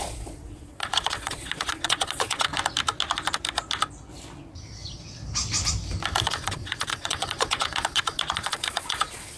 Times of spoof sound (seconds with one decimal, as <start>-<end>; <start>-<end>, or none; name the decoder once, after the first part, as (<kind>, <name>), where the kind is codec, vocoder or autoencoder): 0.0-2.5 (vocoder, Vocos); 6.2-9.4